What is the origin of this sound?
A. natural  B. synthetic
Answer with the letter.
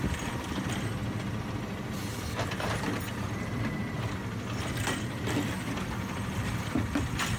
A